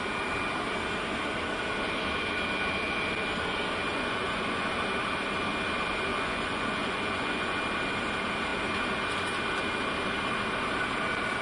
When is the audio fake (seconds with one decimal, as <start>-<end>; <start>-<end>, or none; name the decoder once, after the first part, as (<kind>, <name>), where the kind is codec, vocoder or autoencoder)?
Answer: 3.9-4.7 (vocoder, Vocos); 6.1-7.6